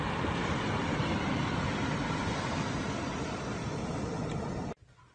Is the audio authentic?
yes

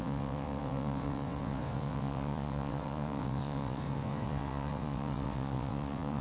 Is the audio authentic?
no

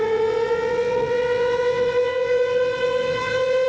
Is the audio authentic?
no